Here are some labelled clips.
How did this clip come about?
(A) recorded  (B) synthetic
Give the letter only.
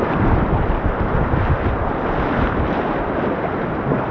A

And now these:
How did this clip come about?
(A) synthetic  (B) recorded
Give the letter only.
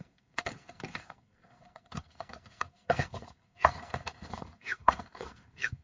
A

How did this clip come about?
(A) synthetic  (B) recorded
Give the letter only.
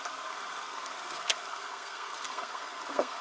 A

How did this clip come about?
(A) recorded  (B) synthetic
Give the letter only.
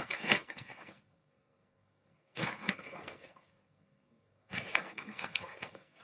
B